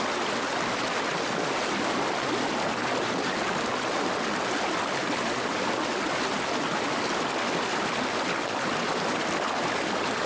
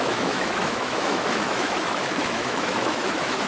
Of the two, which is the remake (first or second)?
second